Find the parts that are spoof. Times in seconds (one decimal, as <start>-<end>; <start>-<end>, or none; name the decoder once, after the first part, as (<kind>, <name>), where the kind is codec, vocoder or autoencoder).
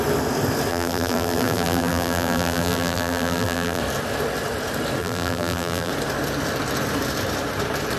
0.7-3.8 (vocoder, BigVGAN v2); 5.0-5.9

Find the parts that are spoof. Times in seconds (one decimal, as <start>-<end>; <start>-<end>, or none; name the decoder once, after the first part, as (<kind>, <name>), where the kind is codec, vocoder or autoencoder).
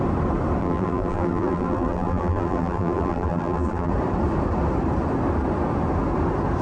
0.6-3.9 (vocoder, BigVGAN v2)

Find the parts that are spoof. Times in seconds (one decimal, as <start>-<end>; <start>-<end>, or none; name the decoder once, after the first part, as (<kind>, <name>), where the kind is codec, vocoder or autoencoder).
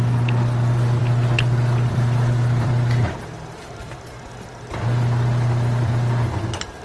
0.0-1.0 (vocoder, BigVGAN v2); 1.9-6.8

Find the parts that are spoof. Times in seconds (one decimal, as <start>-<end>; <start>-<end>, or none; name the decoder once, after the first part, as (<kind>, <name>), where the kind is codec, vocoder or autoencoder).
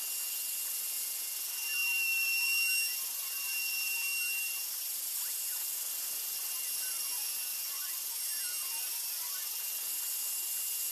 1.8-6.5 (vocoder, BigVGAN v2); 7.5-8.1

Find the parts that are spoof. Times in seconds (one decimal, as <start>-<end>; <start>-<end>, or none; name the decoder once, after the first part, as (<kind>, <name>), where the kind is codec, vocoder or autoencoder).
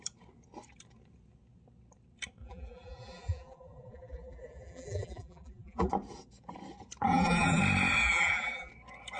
2.4-5.9 (vocoder, BigVGAN v2); 7.1-7.6; 8.0-8.7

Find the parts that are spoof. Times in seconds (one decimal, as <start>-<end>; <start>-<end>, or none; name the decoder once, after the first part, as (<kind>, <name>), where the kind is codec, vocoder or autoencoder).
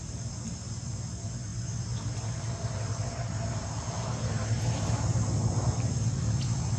0.0-1.5 (vocoder, BigVGAN v2); 3.1-6.8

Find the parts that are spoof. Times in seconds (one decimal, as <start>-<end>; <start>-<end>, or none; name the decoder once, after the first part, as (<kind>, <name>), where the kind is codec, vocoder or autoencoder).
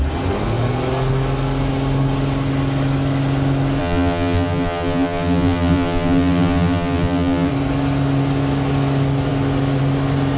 3.8-7.5 (vocoder, BigVGAN v2)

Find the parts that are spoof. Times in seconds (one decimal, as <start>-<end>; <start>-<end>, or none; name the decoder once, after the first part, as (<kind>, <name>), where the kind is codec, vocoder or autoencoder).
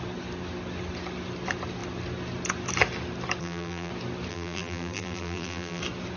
3.4-3.9 (vocoder, BigVGAN v2); 4.3-5.8